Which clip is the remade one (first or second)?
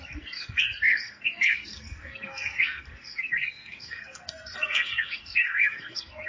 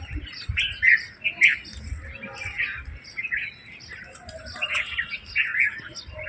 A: first